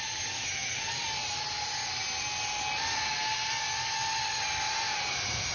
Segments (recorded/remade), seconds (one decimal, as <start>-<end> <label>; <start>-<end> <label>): 0.0-5.5 recorded